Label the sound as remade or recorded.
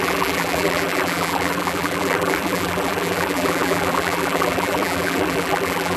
remade